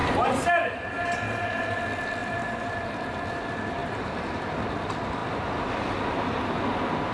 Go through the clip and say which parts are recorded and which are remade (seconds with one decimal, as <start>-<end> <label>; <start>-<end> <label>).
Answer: 0.0-1.8 remade; 1.8-2.2 recorded; 2.2-2.9 remade; 2.9-3.8 recorded; 3.8-4.7 remade; 4.7-7.1 recorded